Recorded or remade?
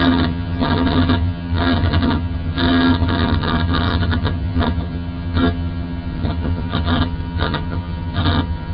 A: remade